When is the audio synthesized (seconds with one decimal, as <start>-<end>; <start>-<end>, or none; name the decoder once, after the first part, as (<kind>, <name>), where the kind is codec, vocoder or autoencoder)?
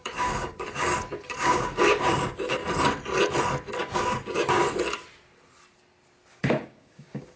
0.0-2.6 (codec, DAC); 3.8-4.6; 6.3-7.4